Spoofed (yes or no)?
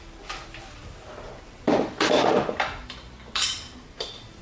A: yes